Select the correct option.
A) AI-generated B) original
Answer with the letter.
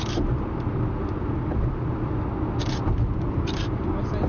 B